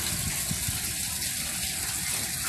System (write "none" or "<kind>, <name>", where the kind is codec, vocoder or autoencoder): none